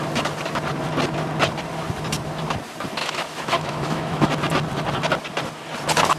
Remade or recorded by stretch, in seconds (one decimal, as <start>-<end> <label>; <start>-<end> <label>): 0.0-3.0 recorded; 3.0-4.3 remade; 4.3-6.2 recorded